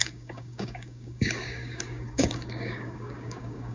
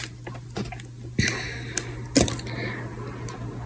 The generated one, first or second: first